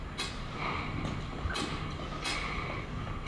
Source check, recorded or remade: recorded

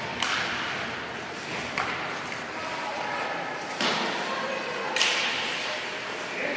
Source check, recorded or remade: recorded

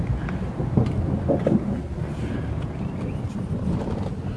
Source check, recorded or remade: recorded